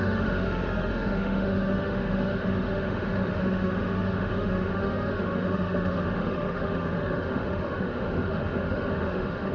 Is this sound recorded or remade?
remade